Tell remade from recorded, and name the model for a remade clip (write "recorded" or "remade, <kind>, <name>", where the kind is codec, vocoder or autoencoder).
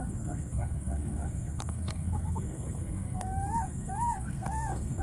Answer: remade, codec, SNAC